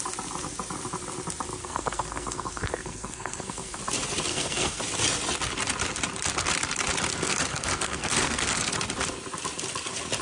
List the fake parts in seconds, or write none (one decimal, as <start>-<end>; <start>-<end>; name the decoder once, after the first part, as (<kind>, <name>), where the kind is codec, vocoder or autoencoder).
1.6-3.8 (codec, SNAC); 4.3-4.8; 7.1-8.7